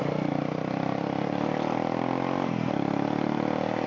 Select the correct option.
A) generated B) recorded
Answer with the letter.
B